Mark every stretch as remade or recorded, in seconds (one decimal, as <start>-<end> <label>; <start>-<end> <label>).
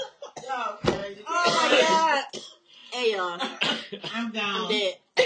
0.0-5.3 recorded